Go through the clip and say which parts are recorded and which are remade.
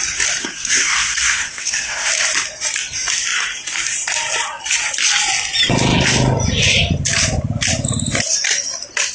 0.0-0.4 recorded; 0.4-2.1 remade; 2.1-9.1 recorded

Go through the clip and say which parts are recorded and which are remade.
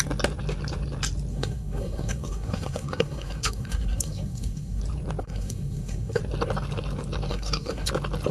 0.0-1.3 recorded; 1.3-4.8 remade; 4.8-5.2 recorded; 5.2-6.2 remade; 6.2-7.3 recorded; 7.3-7.9 remade; 7.9-8.3 recorded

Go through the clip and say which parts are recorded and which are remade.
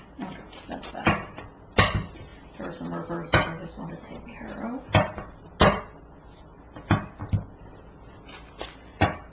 0.0-9.3 recorded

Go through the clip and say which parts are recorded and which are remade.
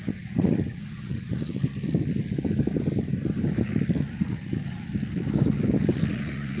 0.0-1.6 remade; 1.6-4.1 recorded; 4.1-4.9 remade; 4.9-6.1 recorded; 6.1-6.6 remade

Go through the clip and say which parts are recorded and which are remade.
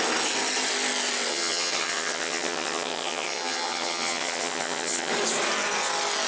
0.0-1.3 recorded; 1.3-5.1 remade; 5.1-6.3 recorded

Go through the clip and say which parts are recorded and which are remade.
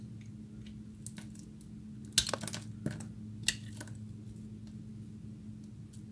0.0-6.1 recorded